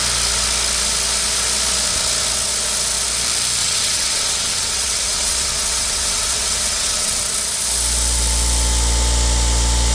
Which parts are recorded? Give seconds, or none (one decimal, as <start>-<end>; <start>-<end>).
0.0-3.6; 7.2-9.9